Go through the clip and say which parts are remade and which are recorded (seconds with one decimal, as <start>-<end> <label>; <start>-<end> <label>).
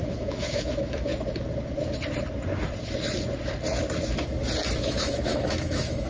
0.0-1.1 remade; 1.1-4.8 recorded; 4.8-6.1 remade